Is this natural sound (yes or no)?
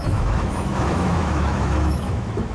no